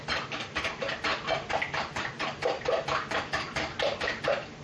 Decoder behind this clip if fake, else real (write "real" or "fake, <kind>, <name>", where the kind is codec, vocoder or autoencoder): real